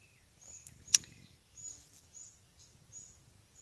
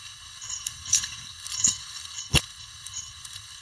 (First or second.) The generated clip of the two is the second